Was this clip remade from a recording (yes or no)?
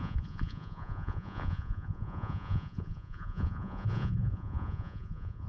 yes